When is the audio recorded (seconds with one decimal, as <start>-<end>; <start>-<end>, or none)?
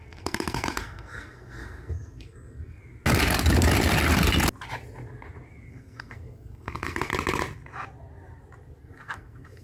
2.8-5.7; 7.1-8.8